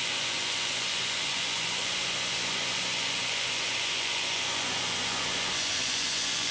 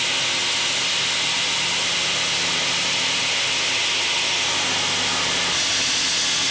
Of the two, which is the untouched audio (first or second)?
second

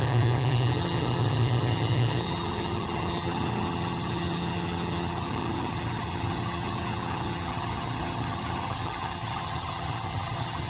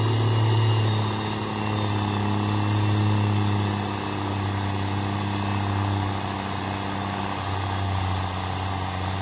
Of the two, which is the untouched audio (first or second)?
second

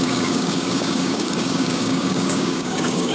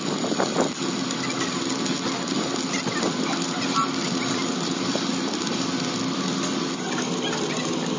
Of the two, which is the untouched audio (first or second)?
second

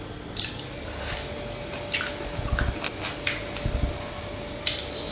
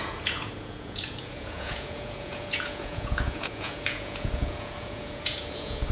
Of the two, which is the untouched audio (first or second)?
first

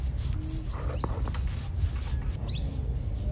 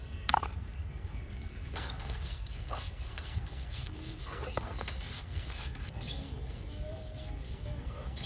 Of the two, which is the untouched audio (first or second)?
first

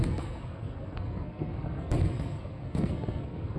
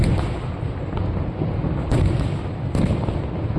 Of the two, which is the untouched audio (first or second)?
second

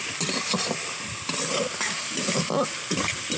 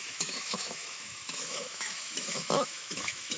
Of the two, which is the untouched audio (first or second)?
first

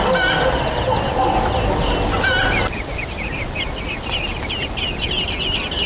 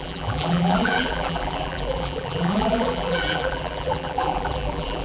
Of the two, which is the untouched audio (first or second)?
first